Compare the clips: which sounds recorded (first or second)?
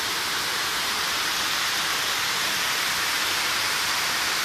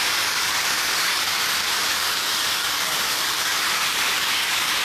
first